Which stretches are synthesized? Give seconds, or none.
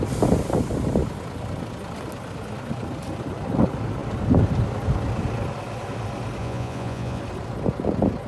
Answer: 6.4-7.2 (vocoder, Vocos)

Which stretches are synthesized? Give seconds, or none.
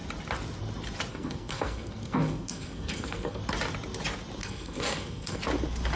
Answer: 1.1-3.4 (codec, SNAC); 4.4-5.4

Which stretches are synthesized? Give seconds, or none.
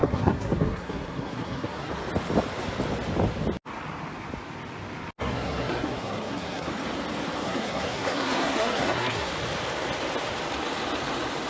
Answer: 0.0-1.9 (codec, SNAC); 5.2-6.7; 7.4-9.3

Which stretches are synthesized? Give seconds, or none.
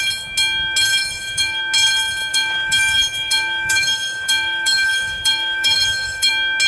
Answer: 1.0-1.6 (autoencoder, DAC-VAE); 2.3-6.3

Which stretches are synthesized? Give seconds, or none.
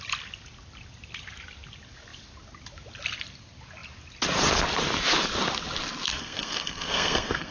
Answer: 6.1-7.5 (codec, SNAC)